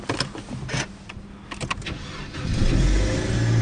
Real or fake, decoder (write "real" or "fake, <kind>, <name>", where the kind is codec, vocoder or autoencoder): real